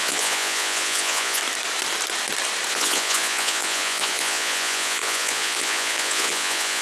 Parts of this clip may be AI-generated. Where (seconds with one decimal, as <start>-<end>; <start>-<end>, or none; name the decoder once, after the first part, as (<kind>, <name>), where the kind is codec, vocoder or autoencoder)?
0.0-1.4 (vocoder, Vocos); 2.7-6.8